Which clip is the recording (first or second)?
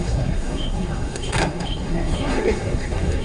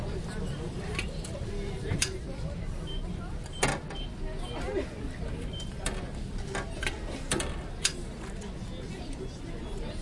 second